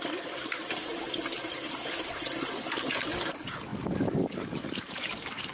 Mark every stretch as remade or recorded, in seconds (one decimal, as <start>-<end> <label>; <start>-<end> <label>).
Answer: 0.0-0.9 remade; 0.9-2.7 recorded; 2.7-5.5 remade